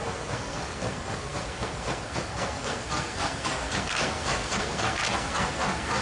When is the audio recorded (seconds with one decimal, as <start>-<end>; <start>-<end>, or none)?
none

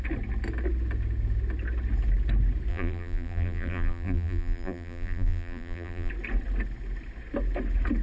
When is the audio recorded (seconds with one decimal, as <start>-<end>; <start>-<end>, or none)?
0.0-2.7; 6.1-8.0

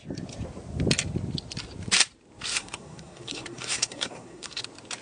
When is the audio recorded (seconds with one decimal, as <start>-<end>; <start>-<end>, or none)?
0.0-2.5; 4.6-5.0